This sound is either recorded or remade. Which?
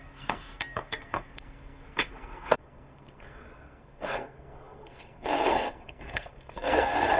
remade